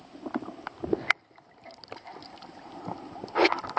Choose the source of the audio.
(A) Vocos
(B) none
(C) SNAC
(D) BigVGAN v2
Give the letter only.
B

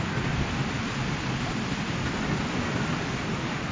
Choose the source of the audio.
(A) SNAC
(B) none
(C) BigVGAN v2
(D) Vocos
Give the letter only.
B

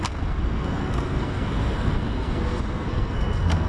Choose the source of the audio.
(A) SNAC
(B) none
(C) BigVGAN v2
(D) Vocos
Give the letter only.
A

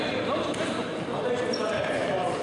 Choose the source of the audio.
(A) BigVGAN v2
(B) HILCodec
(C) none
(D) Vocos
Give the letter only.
C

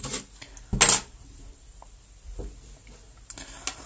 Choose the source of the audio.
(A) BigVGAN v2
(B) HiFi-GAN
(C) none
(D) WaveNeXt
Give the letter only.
C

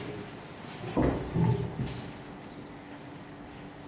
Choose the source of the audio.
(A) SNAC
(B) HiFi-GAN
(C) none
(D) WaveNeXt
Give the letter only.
C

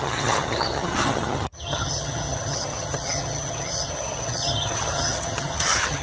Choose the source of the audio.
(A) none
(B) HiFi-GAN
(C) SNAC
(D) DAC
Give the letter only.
B